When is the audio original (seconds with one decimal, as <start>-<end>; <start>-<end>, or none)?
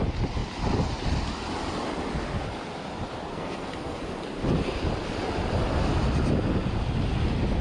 0.0-3.3; 4.0-7.6